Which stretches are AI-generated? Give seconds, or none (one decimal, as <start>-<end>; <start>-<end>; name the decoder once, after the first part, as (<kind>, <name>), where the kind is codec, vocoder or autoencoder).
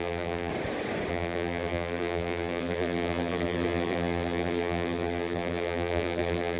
0.0-0.5 (vocoder, BigVGAN v2); 1.1-6.6